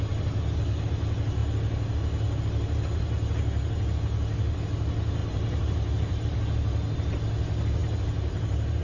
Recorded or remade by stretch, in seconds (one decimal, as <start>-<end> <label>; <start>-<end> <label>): 0.0-5.2 recorded; 5.2-6.4 remade; 6.4-7.8 recorded; 7.8-8.8 remade